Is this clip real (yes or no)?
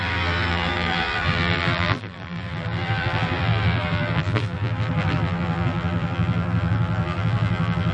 no